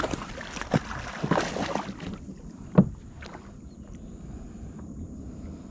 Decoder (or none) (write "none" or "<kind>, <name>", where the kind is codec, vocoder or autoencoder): none